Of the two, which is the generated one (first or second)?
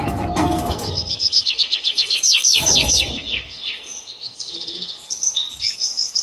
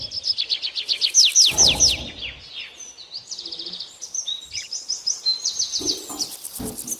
first